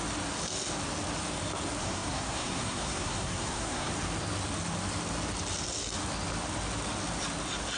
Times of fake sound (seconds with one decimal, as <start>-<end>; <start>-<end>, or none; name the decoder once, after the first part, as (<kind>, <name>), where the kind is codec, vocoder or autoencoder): 1.8-3.9 (codec, SNAC)